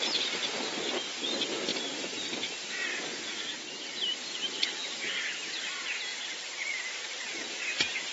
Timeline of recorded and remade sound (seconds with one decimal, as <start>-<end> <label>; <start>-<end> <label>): 0.0-6.1 recorded; 6.1-7.2 remade; 7.2-8.1 recorded